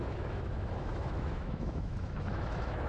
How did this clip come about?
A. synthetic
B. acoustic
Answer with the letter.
A